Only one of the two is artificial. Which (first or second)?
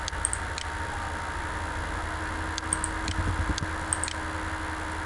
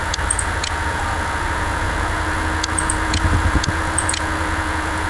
second